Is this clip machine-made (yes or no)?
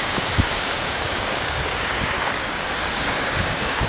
yes